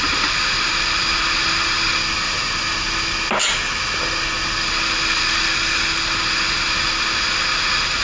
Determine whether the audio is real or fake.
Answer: real